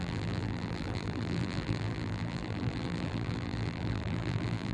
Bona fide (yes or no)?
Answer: no